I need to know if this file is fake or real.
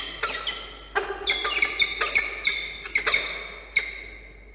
real